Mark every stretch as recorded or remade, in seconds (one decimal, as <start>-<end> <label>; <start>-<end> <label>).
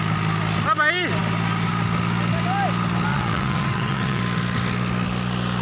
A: 0.0-3.1 recorded; 3.1-4.2 remade; 4.2-5.6 recorded